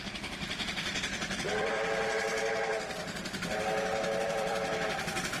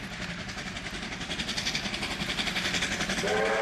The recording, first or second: second